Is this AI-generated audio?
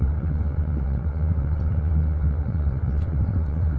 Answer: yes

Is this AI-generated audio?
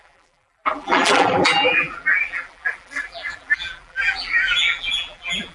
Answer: yes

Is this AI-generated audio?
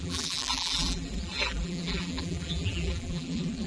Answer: yes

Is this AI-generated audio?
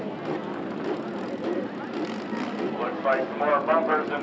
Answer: no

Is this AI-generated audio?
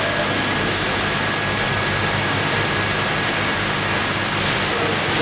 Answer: no